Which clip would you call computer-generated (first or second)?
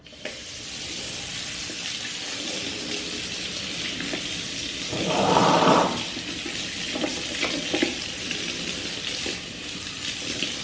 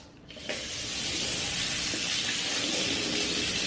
first